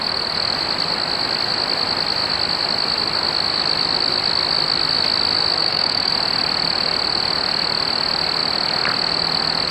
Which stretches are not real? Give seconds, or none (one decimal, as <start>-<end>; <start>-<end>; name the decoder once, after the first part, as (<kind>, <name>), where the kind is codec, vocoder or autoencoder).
5.6-6.1 (autoencoder, DAC-VAE)

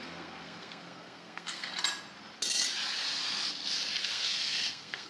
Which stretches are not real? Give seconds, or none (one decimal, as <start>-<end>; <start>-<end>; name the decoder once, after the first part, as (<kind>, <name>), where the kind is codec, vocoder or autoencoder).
0.0-1.7 (codec, SNAC); 4.0-5.1

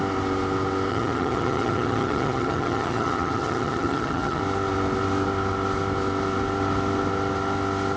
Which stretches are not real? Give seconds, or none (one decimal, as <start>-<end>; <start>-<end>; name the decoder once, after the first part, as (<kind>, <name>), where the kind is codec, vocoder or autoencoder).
0.9-4.4 (vocoder, HiFi-GAN)

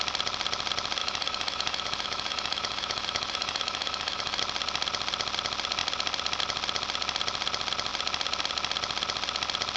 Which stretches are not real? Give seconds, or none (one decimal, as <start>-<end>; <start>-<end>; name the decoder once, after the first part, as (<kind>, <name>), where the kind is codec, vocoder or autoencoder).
1.0-4.4 (autoencoder, DAC-VAE)

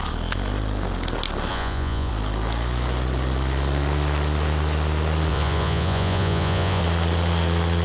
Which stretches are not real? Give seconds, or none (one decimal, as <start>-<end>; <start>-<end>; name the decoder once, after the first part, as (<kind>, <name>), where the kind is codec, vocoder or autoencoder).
1.5-2.1 (vocoder, Vocos); 5.3-6.8

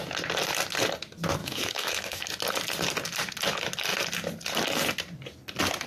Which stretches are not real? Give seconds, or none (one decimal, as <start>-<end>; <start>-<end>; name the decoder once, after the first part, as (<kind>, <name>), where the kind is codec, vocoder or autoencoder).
1.4-2.2 (autoencoder, DAC-VAE)

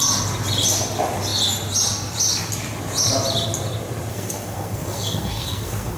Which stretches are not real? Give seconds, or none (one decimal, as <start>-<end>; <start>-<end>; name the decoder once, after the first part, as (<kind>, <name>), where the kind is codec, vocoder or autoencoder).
4.1-6.0 (codec, SNAC)